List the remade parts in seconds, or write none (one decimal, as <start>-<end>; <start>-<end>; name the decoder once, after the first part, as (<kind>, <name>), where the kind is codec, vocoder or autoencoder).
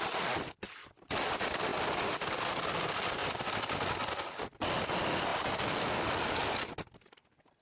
none